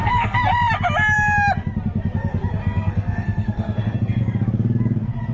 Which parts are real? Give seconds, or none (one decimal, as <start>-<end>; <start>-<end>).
0.5-2.6; 4.2-5.3